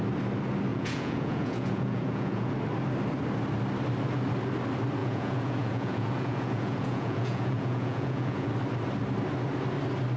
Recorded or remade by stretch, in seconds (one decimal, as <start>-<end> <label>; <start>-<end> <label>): 0.0-0.7 recorded; 0.7-2.5 remade; 2.5-5.0 recorded; 5.0-8.5 remade; 8.5-10.2 recorded